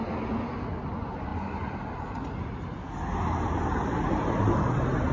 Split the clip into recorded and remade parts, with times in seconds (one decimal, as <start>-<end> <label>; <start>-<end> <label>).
0.0-5.1 recorded